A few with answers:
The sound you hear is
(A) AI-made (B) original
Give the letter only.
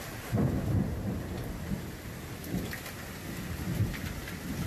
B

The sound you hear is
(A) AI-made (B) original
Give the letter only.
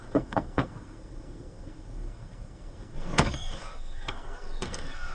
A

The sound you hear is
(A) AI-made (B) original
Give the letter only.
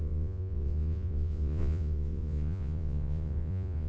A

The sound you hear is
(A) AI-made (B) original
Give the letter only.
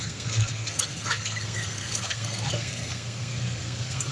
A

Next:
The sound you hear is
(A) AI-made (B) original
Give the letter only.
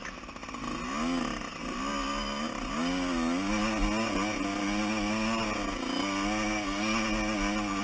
B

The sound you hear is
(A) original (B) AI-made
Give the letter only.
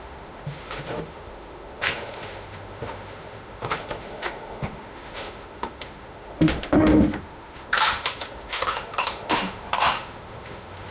B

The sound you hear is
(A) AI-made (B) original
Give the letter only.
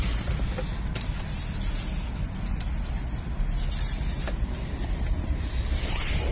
B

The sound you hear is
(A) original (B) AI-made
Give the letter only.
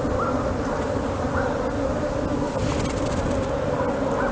A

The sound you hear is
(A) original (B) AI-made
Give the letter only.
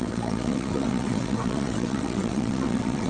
B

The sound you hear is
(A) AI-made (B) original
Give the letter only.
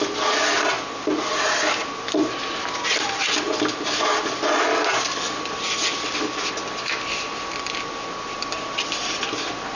B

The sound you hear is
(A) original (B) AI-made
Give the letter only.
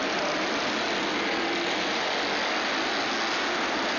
A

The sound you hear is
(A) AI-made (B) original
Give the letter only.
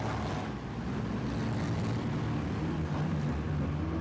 B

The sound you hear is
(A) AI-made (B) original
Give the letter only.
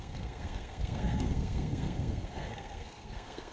A